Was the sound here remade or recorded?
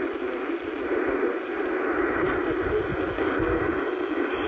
recorded